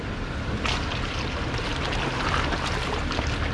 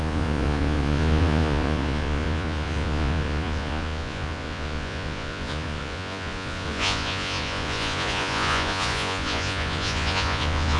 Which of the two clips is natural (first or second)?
first